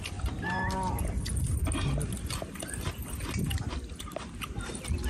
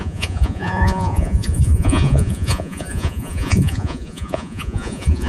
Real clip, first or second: first